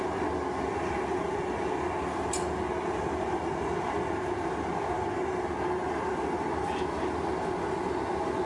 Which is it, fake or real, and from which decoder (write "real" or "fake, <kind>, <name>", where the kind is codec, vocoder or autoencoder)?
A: real